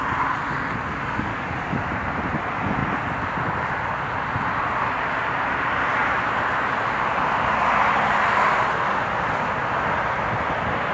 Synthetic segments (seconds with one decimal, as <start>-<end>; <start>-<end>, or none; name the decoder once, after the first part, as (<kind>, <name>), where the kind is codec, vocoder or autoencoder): 1.3-1.9 (codec, DAC)